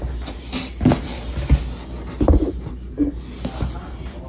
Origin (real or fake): real